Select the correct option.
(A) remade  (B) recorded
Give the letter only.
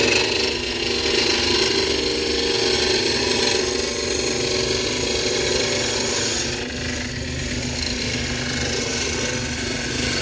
B